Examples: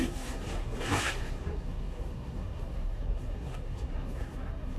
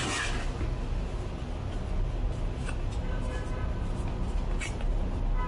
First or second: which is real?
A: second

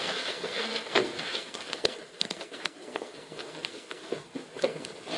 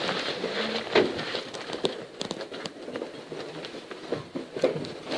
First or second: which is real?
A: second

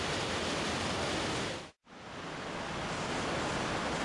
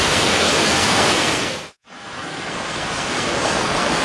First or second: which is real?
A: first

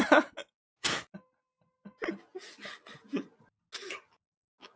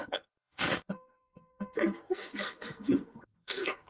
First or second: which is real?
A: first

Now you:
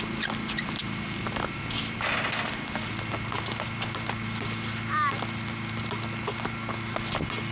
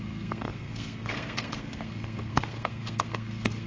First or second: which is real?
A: first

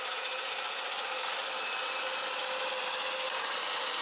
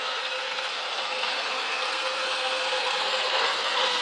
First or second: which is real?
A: first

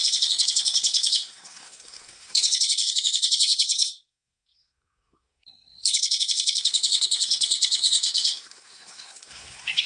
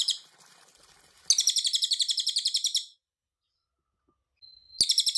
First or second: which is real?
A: second